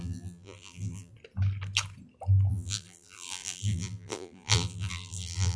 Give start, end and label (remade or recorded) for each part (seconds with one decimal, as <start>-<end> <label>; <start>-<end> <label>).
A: 0.0-1.1 remade; 1.1-2.5 recorded; 2.5-5.6 remade